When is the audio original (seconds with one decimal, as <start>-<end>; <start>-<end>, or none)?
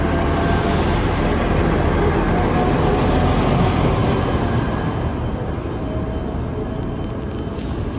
0.0-8.0